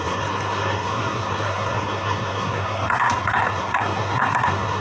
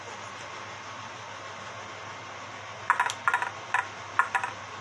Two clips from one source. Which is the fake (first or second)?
first